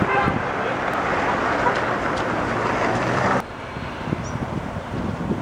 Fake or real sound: fake